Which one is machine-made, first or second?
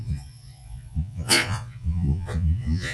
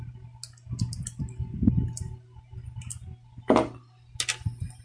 first